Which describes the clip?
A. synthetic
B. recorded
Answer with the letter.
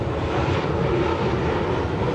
B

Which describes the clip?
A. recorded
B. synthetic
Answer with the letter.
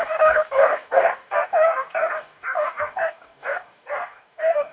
B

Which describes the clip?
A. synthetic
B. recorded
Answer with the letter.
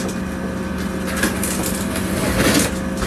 B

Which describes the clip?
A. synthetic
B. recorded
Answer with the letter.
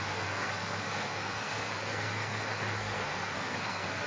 A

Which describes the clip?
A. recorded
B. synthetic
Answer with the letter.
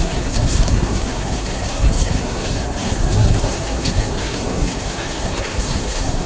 B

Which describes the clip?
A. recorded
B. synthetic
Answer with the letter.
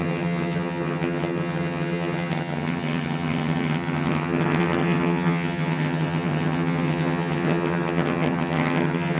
B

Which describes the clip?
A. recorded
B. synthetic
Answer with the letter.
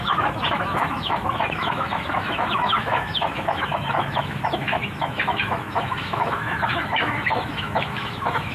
B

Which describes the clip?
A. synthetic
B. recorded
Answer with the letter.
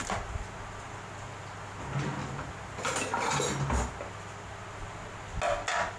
B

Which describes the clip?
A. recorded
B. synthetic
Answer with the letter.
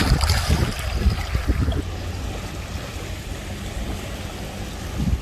A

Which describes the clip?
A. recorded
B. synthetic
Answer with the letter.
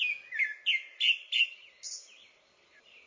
A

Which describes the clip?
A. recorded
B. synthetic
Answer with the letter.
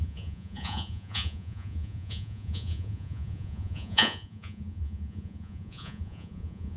B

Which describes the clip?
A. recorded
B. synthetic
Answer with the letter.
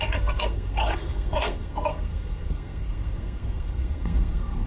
B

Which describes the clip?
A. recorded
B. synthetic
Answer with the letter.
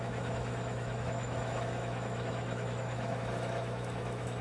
B